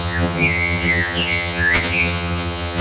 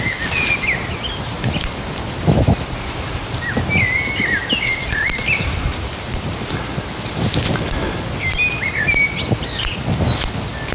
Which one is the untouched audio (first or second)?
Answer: second